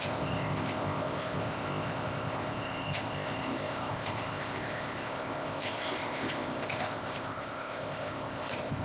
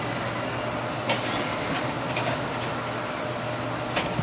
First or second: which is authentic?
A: second